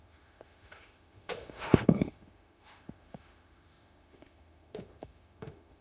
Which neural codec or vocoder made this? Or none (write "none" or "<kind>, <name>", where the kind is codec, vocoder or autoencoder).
autoencoder, DAC-VAE